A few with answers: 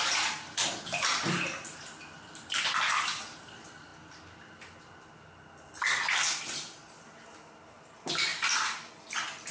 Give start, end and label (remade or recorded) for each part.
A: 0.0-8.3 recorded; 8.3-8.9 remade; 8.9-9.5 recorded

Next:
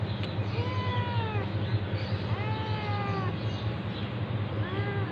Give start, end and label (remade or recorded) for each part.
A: 0.0-5.1 recorded

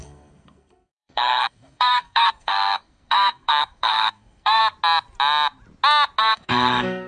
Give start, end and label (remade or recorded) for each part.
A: 0.0-4.6 remade; 4.6-6.2 recorded; 6.2-7.1 remade

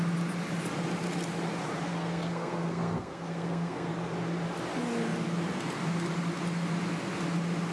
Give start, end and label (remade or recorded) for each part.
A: 0.0-1.9 recorded; 1.9-3.9 remade; 3.9-7.7 recorded

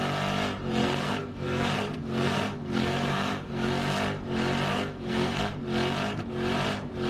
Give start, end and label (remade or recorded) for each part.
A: 0.0-0.8 recorded; 0.8-3.7 remade; 3.7-4.7 recorded; 4.7-5.6 remade; 5.6-7.1 recorded

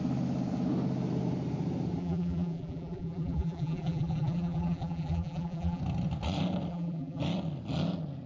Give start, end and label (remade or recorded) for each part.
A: 0.0-2.0 recorded; 2.0-5.8 remade; 5.8-6.7 recorded; 6.7-7.2 remade; 7.2-8.3 recorded